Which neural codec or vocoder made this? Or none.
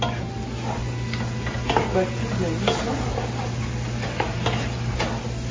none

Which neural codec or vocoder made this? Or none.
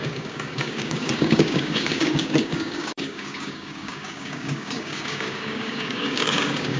codec, DAC